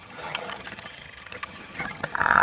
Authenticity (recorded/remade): remade